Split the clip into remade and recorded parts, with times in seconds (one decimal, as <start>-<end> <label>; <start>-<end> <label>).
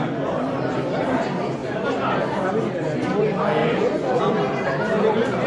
0.0-3.6 recorded; 3.6-4.2 remade; 4.2-5.5 recorded